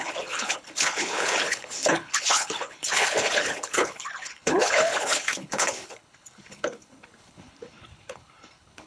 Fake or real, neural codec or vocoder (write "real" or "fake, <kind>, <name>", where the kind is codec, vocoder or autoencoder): fake, codec, HILCodec